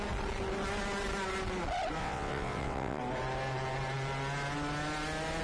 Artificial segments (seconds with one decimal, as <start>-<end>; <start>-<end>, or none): 2.0-3.0